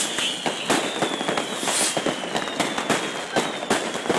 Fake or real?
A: real